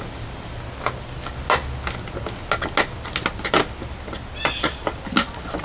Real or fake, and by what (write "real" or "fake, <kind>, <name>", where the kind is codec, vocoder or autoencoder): real